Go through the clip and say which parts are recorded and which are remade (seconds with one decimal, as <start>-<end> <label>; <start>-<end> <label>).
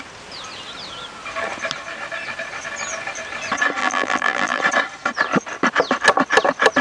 0.0-3.8 recorded; 3.8-4.6 remade; 4.6-6.8 recorded